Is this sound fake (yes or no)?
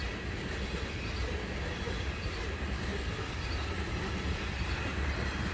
no